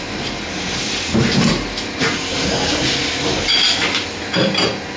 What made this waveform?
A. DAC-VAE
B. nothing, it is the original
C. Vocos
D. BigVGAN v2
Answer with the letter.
B